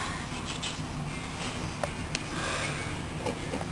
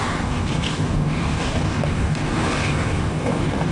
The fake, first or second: second